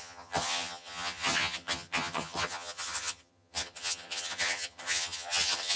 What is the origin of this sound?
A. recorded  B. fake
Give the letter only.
B